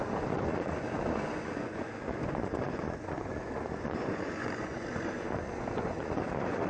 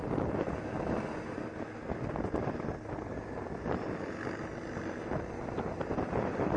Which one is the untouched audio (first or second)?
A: second